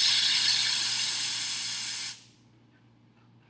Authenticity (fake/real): real